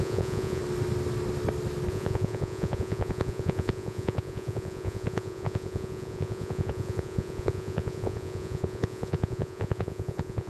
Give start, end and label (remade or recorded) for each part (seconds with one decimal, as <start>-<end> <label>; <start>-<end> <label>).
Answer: 0.0-0.6 remade; 0.6-1.9 recorded; 1.9-10.5 remade